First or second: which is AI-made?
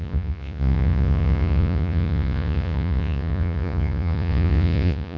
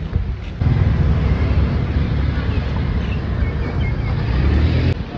first